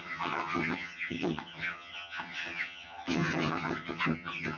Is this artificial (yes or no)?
yes